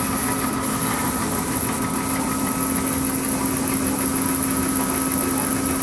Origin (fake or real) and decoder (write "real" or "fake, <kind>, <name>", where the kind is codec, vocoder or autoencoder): real